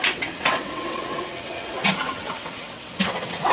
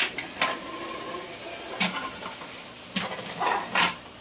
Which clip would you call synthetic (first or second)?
first